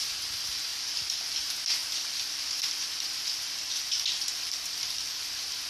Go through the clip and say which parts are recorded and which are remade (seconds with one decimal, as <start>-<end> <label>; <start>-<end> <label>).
0.0-0.7 recorded; 0.7-1.4 remade; 1.4-1.8 recorded; 1.8-5.2 remade; 5.2-5.7 recorded

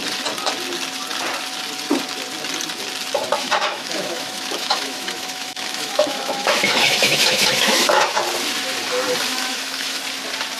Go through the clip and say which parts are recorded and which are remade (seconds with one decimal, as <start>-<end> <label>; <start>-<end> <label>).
0.0-3.4 recorded; 3.4-8.0 remade; 8.0-9.3 recorded; 9.3-10.0 remade; 10.0-10.6 recorded

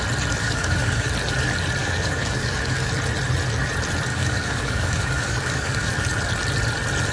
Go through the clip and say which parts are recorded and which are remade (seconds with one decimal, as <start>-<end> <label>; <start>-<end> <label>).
0.0-0.4 recorded; 0.4-1.1 remade; 1.1-1.8 recorded; 1.8-2.9 remade; 2.9-4.1 recorded; 4.1-6.0 remade; 6.0-7.1 recorded

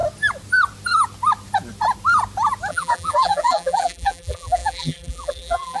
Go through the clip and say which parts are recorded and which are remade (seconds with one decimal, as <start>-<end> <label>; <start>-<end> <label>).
0.0-2.7 recorded; 2.7-5.8 remade

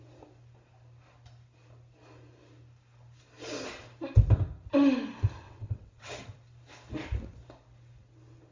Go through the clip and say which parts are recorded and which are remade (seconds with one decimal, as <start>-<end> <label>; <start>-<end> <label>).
0.0-5.4 recorded; 5.4-6.1 remade; 6.1-8.5 recorded

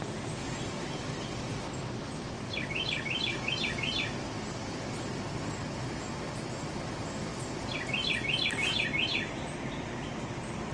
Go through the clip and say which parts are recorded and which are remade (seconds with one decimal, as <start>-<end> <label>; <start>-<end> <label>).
0.0-10.7 recorded

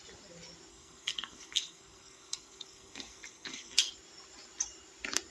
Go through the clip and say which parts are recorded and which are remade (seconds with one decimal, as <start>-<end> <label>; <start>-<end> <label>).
0.0-0.7 recorded; 0.7-3.9 remade; 3.9-5.3 recorded

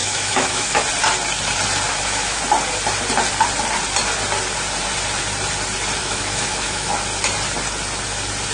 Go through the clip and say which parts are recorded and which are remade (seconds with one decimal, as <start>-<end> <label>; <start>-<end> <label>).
0.0-0.8 remade; 0.8-1.9 recorded; 1.9-2.4 remade; 2.4-6.0 recorded; 6.0-6.9 remade; 6.9-8.5 recorded